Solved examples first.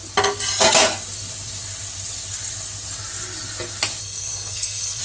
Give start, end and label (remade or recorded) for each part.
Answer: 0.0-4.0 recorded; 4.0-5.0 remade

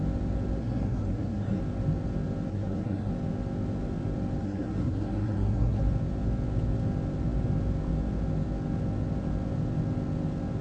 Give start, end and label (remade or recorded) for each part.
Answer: 0.0-0.6 recorded; 0.6-1.6 remade; 1.6-2.5 recorded; 2.5-3.1 remade; 3.1-4.4 recorded; 4.4-5.8 remade; 5.8-10.6 recorded

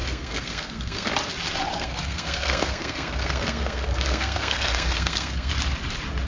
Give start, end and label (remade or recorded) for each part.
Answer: 0.0-1.1 remade; 1.1-1.7 recorded; 1.7-5.5 remade; 5.5-6.3 recorded

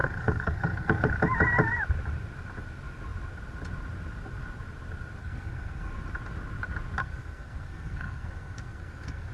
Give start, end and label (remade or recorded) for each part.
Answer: 0.0-1.1 remade; 1.1-5.2 recorded; 5.2-5.9 remade; 5.9-7.0 recorded; 7.0-9.3 remade